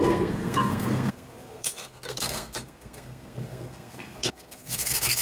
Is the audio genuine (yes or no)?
no